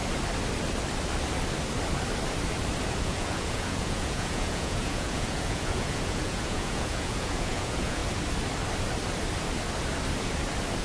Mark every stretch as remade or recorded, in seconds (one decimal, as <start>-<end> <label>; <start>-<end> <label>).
0.0-3.0 recorded; 3.0-8.0 remade; 8.0-10.8 recorded